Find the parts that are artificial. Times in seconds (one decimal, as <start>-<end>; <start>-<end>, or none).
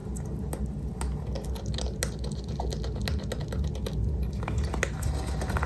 none